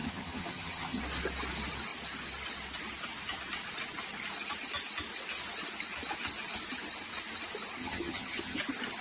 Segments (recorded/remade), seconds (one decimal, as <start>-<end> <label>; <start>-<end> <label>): 0.0-1.0 remade; 1.0-7.8 recorded; 7.8-8.6 remade; 8.6-9.0 recorded